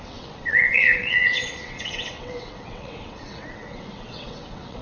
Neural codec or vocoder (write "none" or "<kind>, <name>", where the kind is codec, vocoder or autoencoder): vocoder, WaveNeXt